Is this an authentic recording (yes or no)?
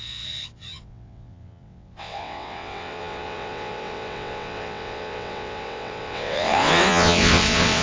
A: no